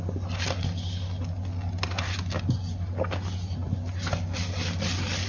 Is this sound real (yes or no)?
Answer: yes